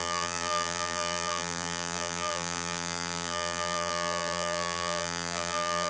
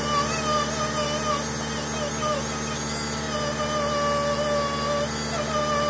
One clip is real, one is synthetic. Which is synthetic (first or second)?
first